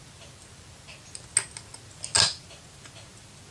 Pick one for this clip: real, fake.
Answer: real